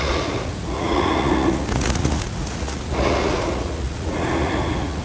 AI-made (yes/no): yes